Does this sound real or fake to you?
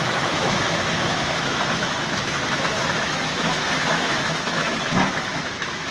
fake